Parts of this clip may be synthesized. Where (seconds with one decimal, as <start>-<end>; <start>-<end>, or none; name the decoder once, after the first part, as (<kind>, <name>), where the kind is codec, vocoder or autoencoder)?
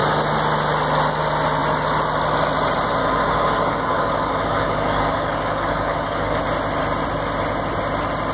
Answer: 3.0-6.4 (codec, DAC)